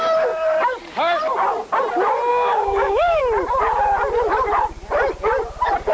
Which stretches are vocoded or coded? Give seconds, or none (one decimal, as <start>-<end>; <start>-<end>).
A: 2.3-3.2